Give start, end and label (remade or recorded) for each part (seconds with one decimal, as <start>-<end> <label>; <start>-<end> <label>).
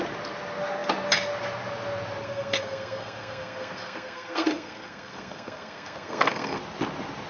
0.0-2.2 recorded; 2.2-6.6 remade; 6.6-7.3 recorded